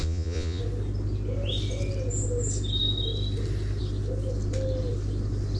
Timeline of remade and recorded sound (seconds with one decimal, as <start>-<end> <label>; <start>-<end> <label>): 0.0-0.6 remade; 0.6-5.6 recorded

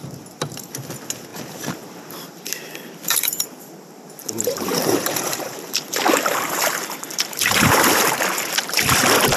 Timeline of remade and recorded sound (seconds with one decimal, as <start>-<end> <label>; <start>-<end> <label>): 0.0-1.3 recorded; 1.3-3.6 remade; 3.6-4.2 recorded; 4.2-8.2 remade; 8.2-9.4 recorded

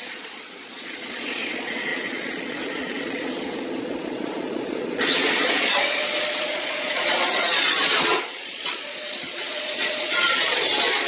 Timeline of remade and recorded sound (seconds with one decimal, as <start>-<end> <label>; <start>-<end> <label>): 0.0-11.1 remade

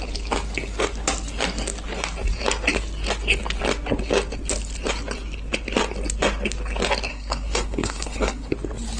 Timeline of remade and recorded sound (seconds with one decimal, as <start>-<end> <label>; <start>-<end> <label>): 0.0-7.1 recorded; 7.1-8.5 remade; 8.5-9.0 recorded

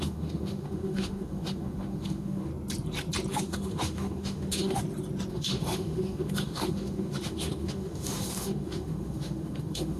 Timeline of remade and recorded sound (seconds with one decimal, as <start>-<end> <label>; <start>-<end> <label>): 0.0-2.5 remade; 2.5-3.3 recorded; 3.3-4.8 remade; 4.8-5.3 recorded; 5.3-10.0 remade